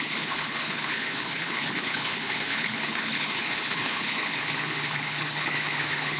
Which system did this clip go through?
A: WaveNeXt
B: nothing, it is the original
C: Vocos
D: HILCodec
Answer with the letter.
D